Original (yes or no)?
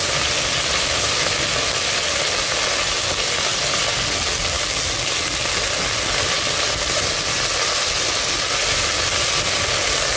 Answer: yes